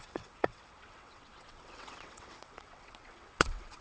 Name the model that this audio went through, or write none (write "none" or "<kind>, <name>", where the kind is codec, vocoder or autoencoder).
vocoder, WaveNeXt